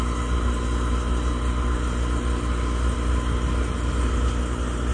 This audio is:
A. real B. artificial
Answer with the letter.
A